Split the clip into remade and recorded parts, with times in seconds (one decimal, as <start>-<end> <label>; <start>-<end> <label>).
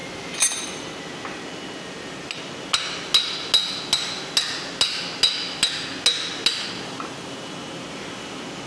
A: 0.0-8.7 recorded